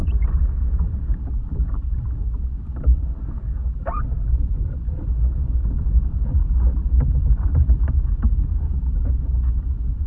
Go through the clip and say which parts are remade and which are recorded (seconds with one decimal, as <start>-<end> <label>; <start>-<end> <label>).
0.0-5.1 remade; 5.1-5.6 recorded; 5.6-9.1 remade; 9.1-10.1 recorded